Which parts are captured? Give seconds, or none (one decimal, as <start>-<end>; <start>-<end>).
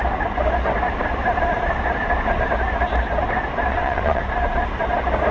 0.0-3.7; 4.2-5.3